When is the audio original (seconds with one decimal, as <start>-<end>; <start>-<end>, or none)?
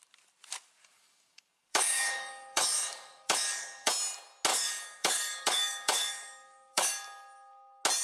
0.0-0.8; 3.9-4.5; 6.9-8.0